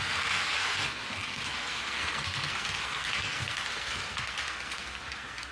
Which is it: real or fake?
fake